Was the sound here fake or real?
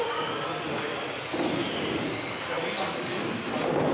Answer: real